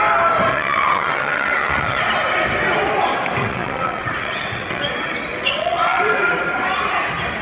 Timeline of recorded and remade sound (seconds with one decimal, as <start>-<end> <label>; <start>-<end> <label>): 0.0-0.5 recorded; 0.5-2.0 remade; 2.0-3.4 recorded; 3.4-4.8 remade; 4.8-5.3 recorded; 5.3-6.2 remade; 6.2-7.4 recorded